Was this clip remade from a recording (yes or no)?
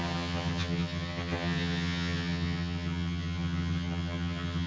yes